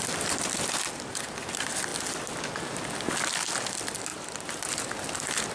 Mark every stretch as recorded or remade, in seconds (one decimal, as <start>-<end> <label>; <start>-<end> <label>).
0.0-4.1 recorded; 4.1-4.7 remade; 4.7-5.5 recorded